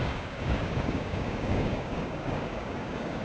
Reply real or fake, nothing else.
fake